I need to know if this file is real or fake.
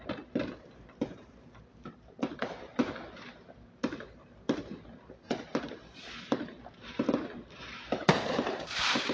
fake